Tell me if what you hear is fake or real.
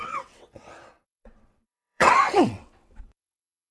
fake